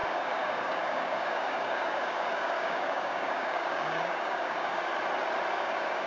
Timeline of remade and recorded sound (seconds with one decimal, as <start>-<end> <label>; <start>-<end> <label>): 0.0-4.9 remade; 4.9-5.5 recorded; 5.5-6.1 remade